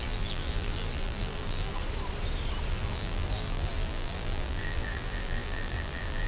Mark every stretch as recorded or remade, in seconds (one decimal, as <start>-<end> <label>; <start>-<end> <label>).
0.0-1.8 remade; 1.8-2.7 recorded; 2.7-6.3 remade